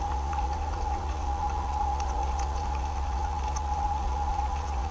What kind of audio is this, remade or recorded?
remade